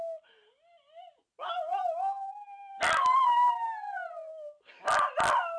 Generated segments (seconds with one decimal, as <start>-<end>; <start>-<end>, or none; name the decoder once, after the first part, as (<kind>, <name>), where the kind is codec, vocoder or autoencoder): none